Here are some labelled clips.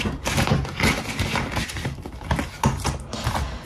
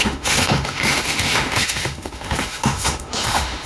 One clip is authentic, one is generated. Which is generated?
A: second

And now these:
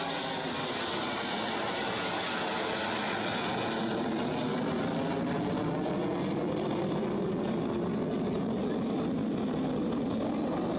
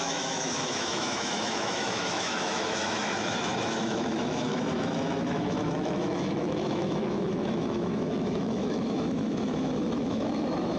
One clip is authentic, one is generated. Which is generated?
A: second